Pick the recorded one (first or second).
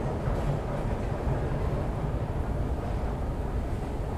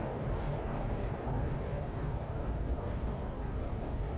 first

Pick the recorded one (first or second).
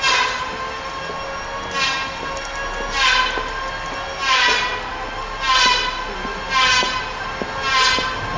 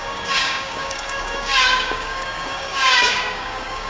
first